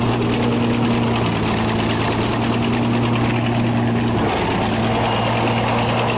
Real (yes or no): yes